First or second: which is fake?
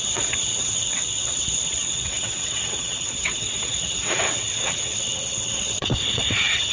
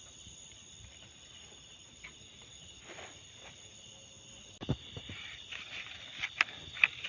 first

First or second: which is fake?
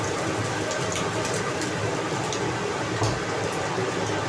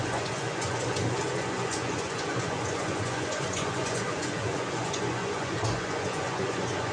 second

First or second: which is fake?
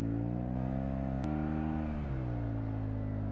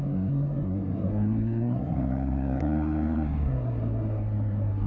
second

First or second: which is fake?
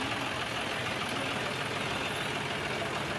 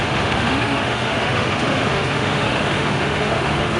second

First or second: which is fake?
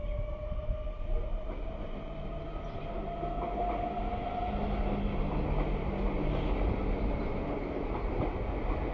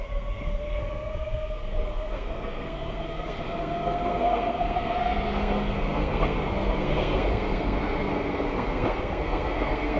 second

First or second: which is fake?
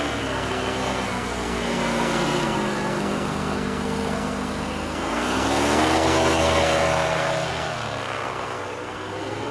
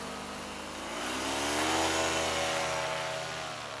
first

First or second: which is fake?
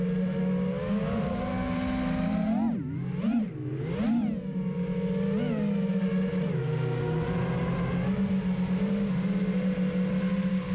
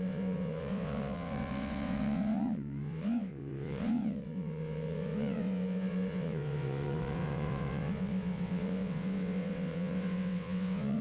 second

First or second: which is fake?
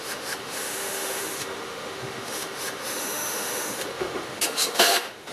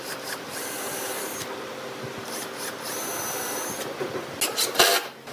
first